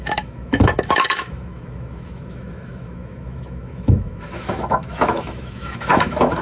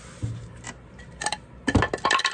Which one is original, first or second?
second